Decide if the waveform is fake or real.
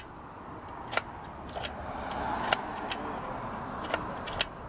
real